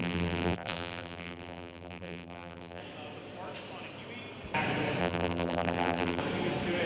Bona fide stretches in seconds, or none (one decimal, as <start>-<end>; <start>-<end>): 2.8-5.0; 6.2-6.9